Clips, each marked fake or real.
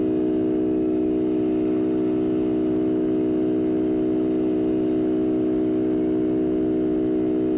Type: real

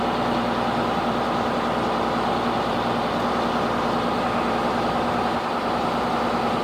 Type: real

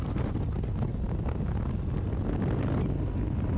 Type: real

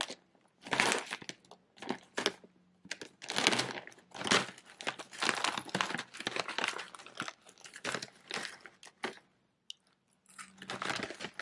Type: real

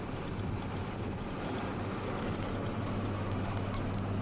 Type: real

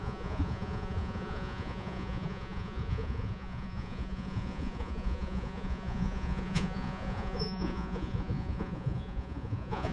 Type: fake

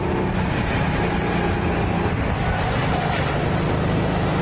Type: real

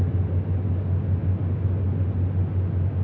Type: real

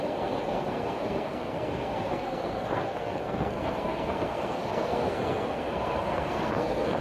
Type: fake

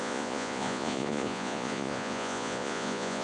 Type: fake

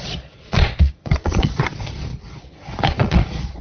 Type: fake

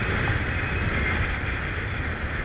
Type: real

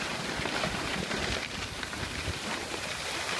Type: fake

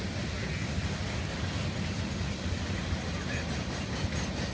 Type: real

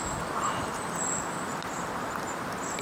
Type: real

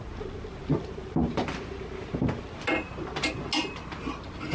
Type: real